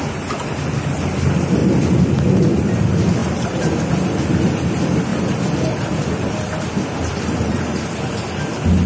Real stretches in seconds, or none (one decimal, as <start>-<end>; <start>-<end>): 0.0-3.2; 3.9-5.1; 7.6-8.9